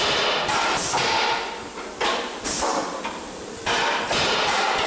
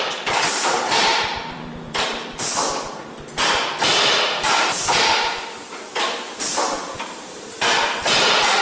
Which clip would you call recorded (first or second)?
first